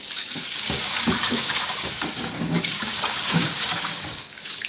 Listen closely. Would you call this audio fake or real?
fake